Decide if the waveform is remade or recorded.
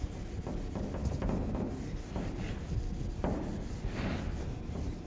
recorded